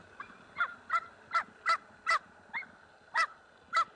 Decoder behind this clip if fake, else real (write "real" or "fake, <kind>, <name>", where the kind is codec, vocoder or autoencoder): real